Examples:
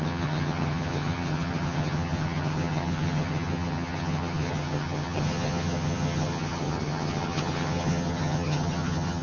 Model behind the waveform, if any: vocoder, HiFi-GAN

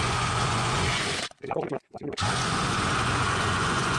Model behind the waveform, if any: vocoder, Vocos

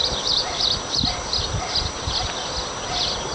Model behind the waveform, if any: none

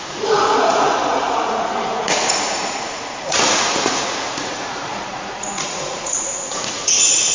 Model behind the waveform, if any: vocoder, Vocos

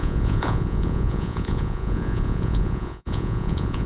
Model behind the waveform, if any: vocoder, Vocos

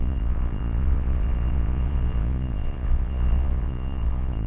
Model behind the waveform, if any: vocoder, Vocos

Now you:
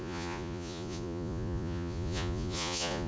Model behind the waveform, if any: vocoder, Vocos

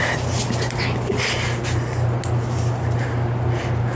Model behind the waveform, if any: none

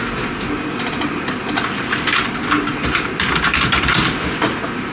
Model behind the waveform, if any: none